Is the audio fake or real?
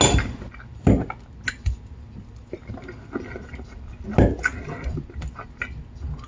real